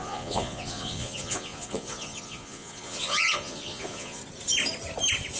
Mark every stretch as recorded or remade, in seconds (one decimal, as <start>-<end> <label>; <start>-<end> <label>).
0.0-4.2 remade; 4.2-5.4 recorded